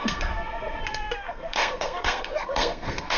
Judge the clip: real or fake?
fake